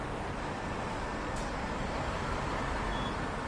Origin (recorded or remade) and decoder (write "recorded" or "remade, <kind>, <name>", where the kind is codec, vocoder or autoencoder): recorded